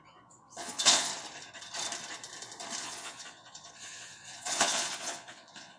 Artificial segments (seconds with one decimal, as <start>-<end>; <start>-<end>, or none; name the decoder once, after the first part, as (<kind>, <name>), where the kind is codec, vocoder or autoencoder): 0.0-1.1 (vocoder, Vocos); 2.8-5.8